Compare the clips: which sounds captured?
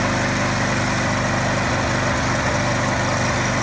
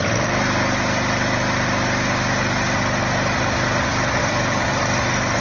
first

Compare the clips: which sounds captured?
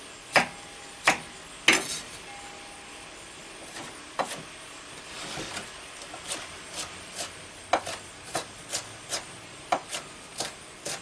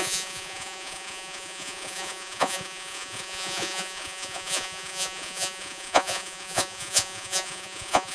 first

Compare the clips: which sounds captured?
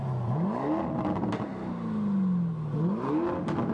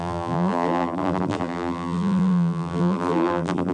first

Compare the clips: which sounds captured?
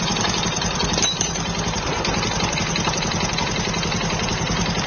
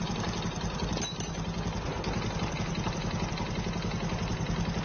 second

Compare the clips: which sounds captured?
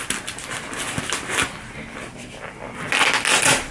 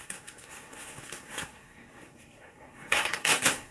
first